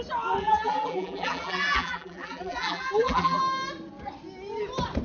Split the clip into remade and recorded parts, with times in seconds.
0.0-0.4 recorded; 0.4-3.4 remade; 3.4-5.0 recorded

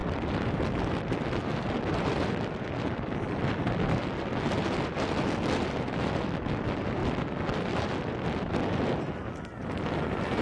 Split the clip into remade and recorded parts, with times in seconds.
0.0-3.7 remade; 3.7-10.4 recorded

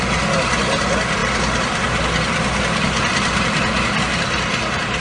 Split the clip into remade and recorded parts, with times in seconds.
0.0-1.2 recorded; 1.2-4.0 remade; 4.0-5.0 recorded

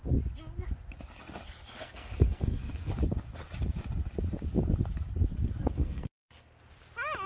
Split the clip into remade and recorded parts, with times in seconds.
0.0-1.8 recorded; 1.8-2.9 remade; 2.9-5.6 recorded; 5.6-6.6 remade; 6.6-7.3 recorded

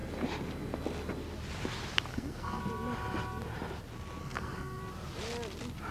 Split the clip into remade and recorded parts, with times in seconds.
0.0-2.1 recorded; 2.1-2.6 remade; 2.6-4.2 recorded; 4.2-4.8 remade; 4.8-5.9 recorded

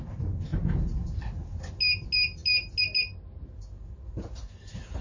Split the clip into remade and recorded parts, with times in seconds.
0.0-5.0 recorded

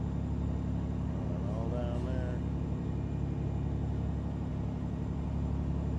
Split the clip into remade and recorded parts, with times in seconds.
0.0-6.0 recorded

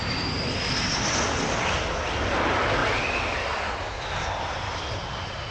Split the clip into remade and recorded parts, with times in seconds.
0.0-2.8 recorded; 2.8-4.2 remade; 4.2-5.5 recorded